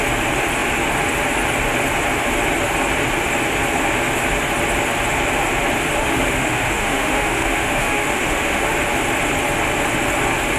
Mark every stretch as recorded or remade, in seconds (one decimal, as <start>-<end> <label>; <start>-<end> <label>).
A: 0.0-6.0 recorded; 6.0-8.7 remade; 8.7-10.6 recorded